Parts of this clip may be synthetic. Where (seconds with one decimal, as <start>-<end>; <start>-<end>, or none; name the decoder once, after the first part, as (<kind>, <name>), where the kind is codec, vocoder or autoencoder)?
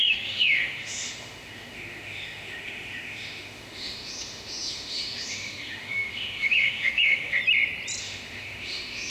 0.0-7.4 (autoencoder, DAC-VAE); 8.0-9.1